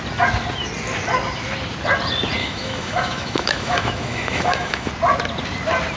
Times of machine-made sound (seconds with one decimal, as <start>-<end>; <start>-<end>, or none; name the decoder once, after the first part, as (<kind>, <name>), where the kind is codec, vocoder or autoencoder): 2.4-4.9 (autoencoder, DAC-VAE)